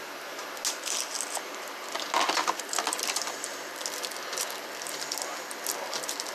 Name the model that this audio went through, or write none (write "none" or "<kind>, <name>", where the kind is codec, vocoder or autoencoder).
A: none